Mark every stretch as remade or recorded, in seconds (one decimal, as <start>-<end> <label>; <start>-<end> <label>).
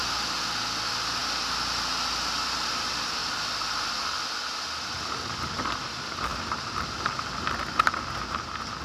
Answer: 0.0-1.2 remade; 1.2-2.3 recorded; 2.3-3.2 remade; 3.2-5.5 recorded; 5.5-6.3 remade; 6.3-8.8 recorded